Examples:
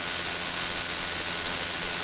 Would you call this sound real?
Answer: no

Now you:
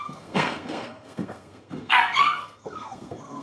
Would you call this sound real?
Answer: no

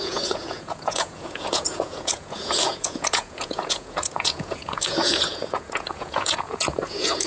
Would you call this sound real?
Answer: no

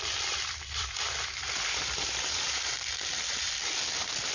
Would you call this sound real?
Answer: no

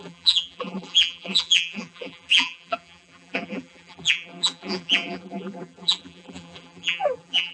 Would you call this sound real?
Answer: no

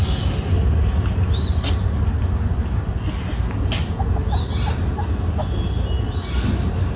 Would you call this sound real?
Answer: yes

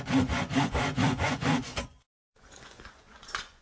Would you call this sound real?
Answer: no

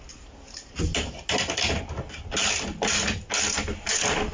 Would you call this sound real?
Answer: yes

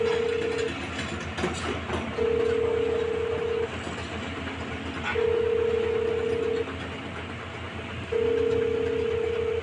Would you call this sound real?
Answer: yes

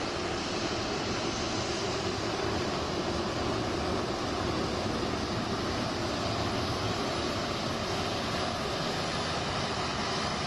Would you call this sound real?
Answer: yes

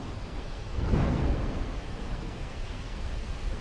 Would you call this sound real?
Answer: no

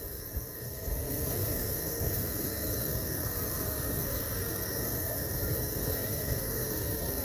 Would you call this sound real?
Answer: no